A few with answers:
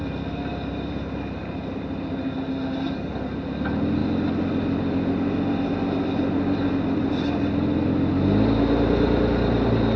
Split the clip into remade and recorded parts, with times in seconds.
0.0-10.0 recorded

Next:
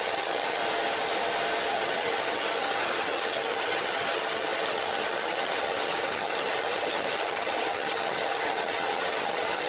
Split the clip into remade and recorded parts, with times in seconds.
0.0-0.6 remade; 0.6-1.7 recorded; 1.7-9.7 remade

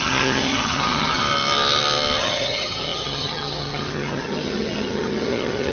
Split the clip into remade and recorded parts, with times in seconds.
0.0-1.2 remade; 1.2-2.2 recorded; 2.2-5.7 remade

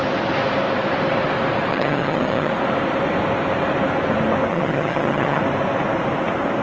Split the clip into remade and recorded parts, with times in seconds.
0.0-1.7 recorded; 1.7-2.5 remade; 2.5-4.5 recorded; 4.5-5.4 remade; 5.4-6.6 recorded

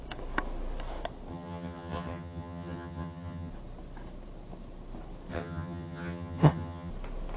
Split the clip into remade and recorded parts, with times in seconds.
0.0-1.3 recorded; 1.3-3.5 remade; 3.5-5.3 recorded; 5.3-6.9 remade; 6.9-7.4 recorded

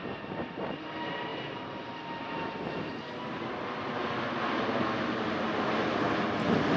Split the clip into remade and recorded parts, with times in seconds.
0.0-6.8 recorded

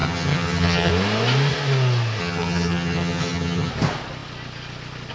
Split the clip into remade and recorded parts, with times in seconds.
0.0-0.9 remade; 0.9-2.2 recorded; 2.2-3.7 remade; 3.7-5.1 recorded